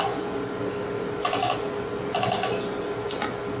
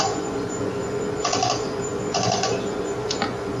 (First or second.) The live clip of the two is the first